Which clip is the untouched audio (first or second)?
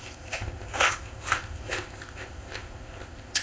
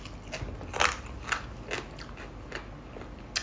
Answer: second